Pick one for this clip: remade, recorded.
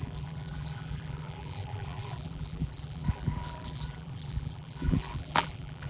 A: remade